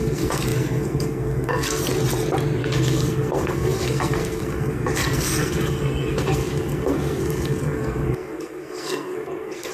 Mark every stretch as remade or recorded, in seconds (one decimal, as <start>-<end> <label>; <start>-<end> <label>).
0.0-1.8 remade; 1.8-2.6 recorded; 2.6-9.7 remade